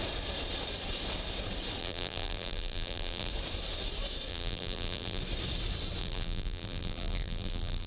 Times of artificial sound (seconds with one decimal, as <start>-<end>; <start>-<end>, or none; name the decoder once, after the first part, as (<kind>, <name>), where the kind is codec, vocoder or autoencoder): 1.8-3.3 (vocoder, BigVGAN v2); 4.3-5.2; 6.0-7.9